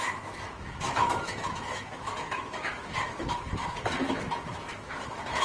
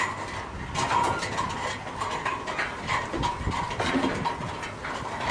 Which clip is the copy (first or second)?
first